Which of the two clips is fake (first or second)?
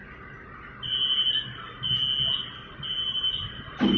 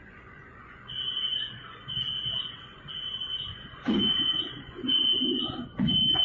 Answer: second